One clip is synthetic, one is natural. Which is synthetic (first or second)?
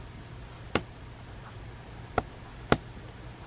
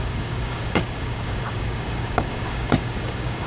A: second